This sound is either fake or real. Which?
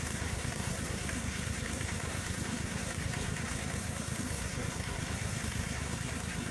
fake